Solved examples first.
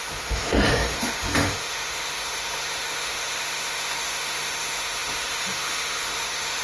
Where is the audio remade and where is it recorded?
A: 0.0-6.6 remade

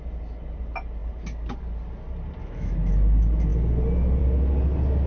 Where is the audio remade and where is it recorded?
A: 0.0-2.4 recorded; 2.4-2.9 remade; 2.9-5.1 recorded

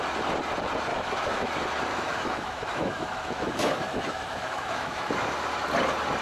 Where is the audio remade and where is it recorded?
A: 0.0-0.9 recorded; 0.9-1.5 remade; 1.5-1.9 recorded; 1.9-5.1 remade; 5.1-6.2 recorded